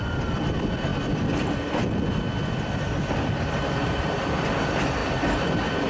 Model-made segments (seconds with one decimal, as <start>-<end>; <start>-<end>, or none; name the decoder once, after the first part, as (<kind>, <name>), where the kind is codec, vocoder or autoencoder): 0.0-0.9 (vocoder, BigVGAN v2); 3.5-5.9

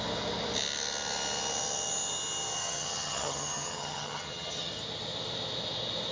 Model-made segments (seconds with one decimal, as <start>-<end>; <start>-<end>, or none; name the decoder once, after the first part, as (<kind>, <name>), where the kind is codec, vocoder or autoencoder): 2.6-4.7 (vocoder, HiFi-GAN)

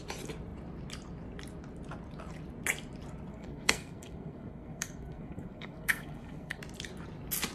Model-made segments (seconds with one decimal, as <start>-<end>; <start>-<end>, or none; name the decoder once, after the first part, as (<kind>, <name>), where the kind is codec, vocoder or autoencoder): 3.3-6.6 (codec, SNAC)

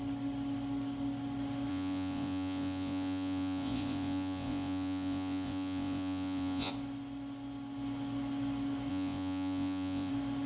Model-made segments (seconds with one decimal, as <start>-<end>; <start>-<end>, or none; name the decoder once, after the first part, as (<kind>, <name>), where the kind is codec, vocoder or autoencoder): 1.7-6.7 (vocoder, Vocos); 8.9-10.1

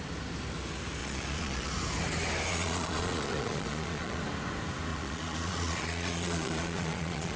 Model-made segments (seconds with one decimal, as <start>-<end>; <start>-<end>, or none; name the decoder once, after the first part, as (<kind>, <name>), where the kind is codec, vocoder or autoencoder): 1.0-1.7 (vocoder, Vocos); 2.5-4.2; 4.9-7.4

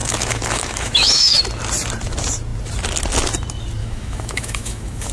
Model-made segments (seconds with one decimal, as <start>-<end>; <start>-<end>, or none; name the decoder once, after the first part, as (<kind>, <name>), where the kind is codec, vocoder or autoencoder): 0.0-1.4 (autoencoder, DAC-VAE); 3.8-5.1